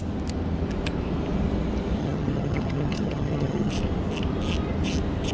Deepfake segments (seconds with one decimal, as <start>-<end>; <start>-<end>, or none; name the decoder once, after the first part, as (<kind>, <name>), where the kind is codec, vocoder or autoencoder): 2.0-3.7 (vocoder, HiFi-GAN)